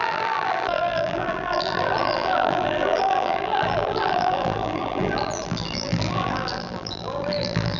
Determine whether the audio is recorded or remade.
remade